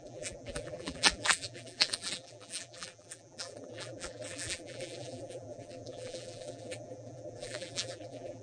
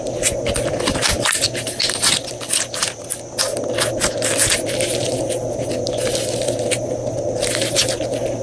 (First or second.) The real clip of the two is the second